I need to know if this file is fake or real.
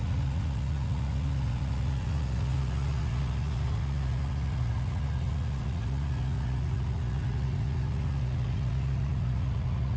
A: fake